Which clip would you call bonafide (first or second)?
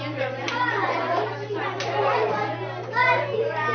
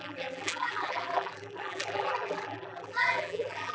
first